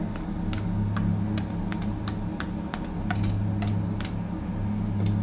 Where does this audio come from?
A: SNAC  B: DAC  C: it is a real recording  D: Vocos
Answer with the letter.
C